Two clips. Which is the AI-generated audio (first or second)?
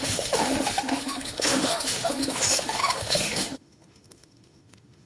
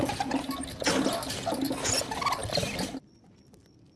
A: first